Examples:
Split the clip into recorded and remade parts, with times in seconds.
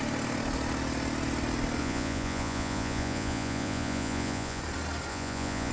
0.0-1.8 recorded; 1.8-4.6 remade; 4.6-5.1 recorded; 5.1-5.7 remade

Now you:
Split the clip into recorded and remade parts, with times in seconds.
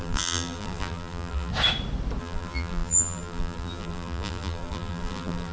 0.0-1.5 remade; 1.5-2.2 recorded; 2.2-5.5 remade